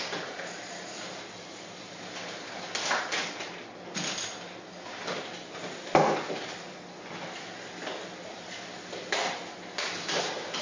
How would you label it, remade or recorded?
recorded